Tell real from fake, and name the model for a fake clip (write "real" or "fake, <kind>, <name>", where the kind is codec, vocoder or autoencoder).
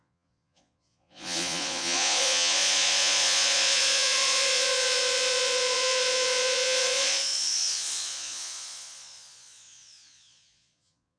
fake, vocoder, Vocos